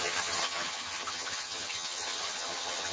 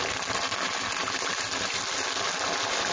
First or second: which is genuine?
second